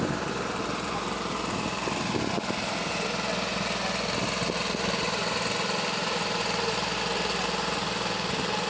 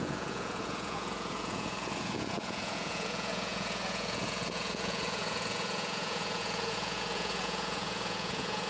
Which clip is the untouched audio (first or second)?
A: first